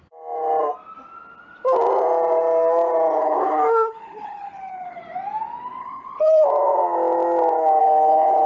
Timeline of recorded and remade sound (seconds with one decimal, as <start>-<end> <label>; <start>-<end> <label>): 0.0-3.2 recorded; 3.2-5.0 remade; 5.0-5.8 recorded; 5.8-6.5 remade; 6.5-7.8 recorded; 7.8-8.5 remade